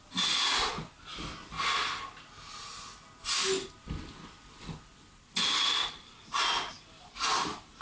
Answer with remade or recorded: recorded